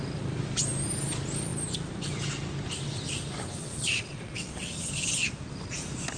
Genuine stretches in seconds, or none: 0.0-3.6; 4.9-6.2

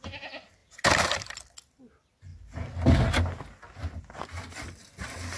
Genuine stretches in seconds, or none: 0.0-5.4

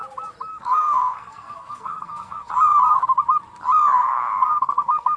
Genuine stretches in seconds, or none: 0.0-0.5; 2.5-4.0

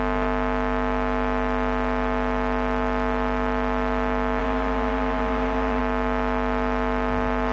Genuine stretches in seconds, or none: 0.0-4.4; 5.8-7.5

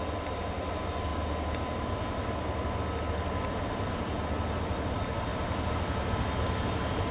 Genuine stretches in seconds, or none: 0.0-7.1

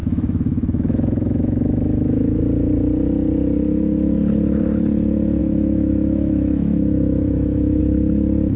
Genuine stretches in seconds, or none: 2.4-5.4; 7.8-8.6